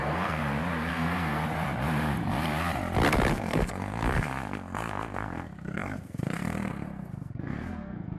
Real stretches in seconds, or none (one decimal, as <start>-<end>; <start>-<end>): 0.4-0.9; 1.4-3.3